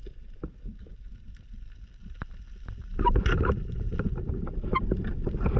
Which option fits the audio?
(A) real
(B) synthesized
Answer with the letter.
A